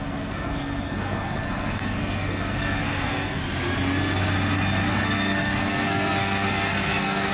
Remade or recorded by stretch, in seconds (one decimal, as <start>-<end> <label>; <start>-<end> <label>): 0.0-3.4 remade; 3.4-4.9 recorded; 4.9-7.3 remade